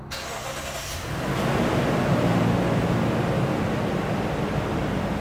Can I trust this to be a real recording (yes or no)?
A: yes